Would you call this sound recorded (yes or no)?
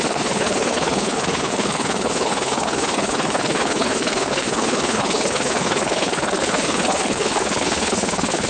no